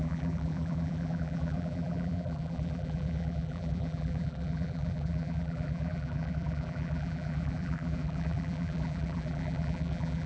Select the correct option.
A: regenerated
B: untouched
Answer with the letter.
A